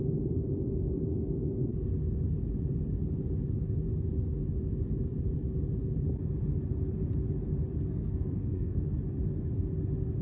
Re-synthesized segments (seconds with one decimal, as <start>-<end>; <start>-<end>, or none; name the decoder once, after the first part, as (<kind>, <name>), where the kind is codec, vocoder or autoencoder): 7.9-8.9 (codec, SNAC)